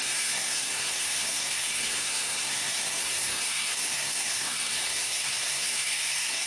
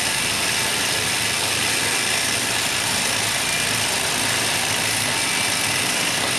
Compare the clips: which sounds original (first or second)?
second